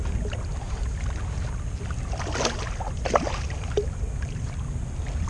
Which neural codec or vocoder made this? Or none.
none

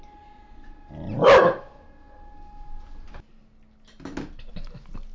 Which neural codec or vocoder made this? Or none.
none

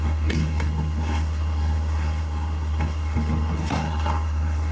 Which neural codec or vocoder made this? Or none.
codec, SNAC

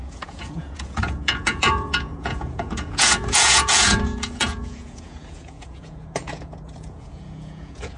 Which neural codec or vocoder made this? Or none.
vocoder, Vocos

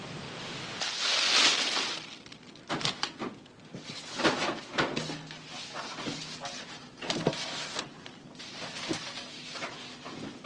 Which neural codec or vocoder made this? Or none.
none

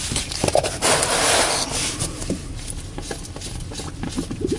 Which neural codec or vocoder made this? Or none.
none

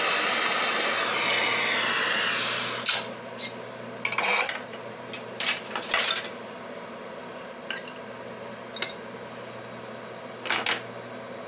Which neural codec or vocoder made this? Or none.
none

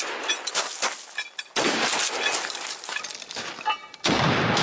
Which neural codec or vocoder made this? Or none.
none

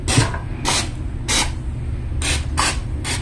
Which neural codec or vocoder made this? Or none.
none